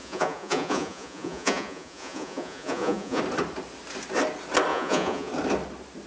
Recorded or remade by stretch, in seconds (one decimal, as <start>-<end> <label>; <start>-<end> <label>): 0.0-3.2 remade; 3.2-4.7 recorded; 4.7-5.3 remade; 5.3-6.1 recorded